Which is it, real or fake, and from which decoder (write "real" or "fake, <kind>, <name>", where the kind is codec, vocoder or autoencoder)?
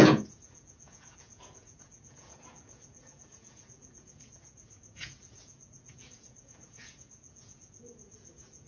fake, vocoder, Vocos